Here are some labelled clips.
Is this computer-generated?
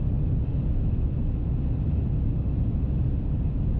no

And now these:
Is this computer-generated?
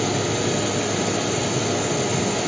no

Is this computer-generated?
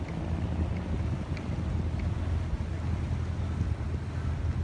no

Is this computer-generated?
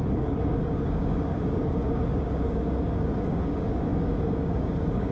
yes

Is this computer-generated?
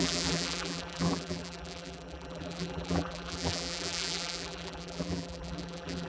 yes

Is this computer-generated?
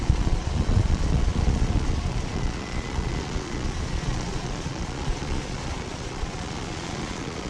yes